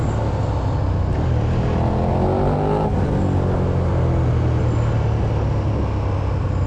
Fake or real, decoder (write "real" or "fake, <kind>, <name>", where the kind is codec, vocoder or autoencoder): real